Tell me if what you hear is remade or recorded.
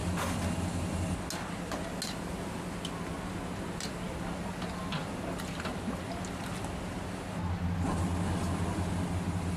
recorded